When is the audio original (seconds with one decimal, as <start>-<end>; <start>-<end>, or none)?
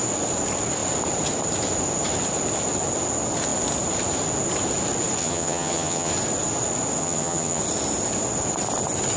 0.0-5.2; 6.1-7.0; 7.6-9.2